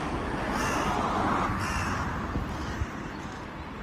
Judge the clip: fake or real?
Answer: real